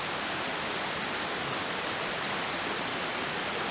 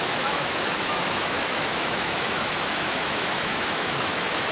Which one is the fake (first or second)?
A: second